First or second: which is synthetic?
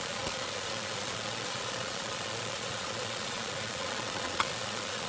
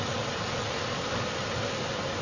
first